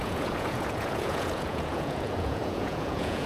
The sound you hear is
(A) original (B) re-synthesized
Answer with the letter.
B